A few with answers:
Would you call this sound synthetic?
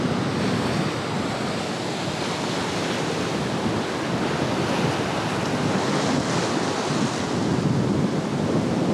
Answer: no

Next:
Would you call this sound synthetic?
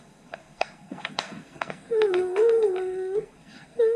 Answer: yes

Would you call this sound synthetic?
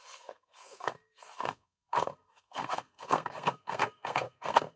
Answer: yes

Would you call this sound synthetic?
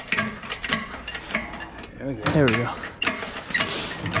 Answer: no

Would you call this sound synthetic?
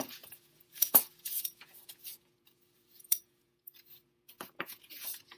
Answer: yes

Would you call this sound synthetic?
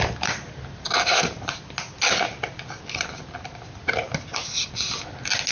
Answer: no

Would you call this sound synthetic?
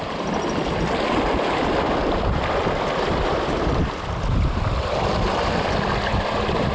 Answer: yes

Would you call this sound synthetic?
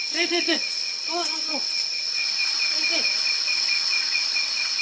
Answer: yes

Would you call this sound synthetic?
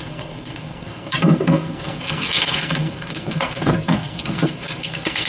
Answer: yes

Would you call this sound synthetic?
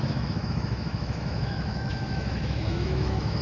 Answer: yes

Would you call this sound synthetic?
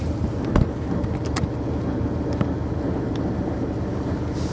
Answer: no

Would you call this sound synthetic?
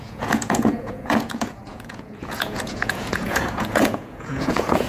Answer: yes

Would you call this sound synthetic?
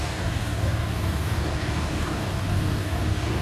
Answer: yes